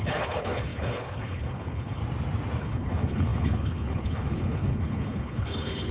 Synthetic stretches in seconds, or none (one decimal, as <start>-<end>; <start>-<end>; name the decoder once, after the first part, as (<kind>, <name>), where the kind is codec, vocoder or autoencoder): 0.0-2.0 (codec, HILCodec); 2.6-5.9

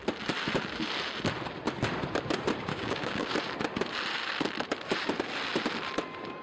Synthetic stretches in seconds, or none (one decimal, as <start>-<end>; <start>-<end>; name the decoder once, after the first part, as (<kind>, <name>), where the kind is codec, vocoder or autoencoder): 2.7-3.3 (codec, DAC)

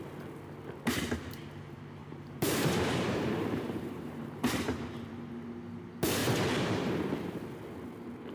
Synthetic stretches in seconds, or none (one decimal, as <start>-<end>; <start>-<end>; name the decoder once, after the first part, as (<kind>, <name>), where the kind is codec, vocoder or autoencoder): 2.0-5.1 (vocoder, BigVGAN v2); 6.2-7.0

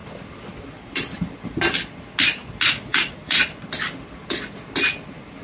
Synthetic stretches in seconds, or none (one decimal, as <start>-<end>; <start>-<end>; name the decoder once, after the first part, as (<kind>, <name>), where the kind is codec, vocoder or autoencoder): 2.9-3.6 (vocoder, BigVGAN v2)

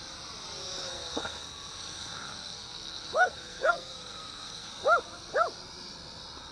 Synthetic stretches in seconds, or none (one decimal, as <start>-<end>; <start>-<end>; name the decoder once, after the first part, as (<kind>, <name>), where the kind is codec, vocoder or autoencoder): 0.8-4.7 (codec, SNAC)

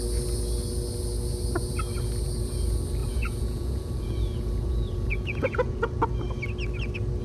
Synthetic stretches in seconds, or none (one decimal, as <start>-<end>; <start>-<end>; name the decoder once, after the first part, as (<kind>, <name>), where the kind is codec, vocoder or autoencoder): 3.0-5.9 (vocoder, Vocos)

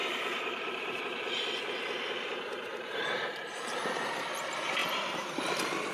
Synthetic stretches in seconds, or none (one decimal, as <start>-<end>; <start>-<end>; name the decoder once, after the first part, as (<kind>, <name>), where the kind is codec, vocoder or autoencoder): 0.0-1.0 (vocoder, BigVGAN v2); 2.7-3.8

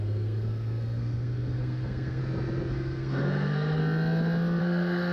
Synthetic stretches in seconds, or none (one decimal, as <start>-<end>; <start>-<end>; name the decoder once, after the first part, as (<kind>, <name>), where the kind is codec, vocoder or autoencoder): 0.0-2.2 (codec, SNAC); 2.7-3.8; 4.6-5.1